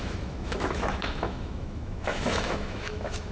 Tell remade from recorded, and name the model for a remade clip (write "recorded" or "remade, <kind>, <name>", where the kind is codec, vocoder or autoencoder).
remade, autoencoder, DAC-VAE